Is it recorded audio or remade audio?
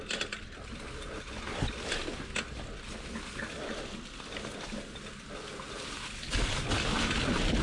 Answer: recorded